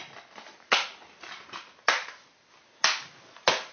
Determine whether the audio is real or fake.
real